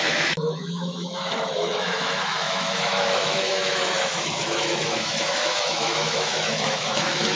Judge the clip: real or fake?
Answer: fake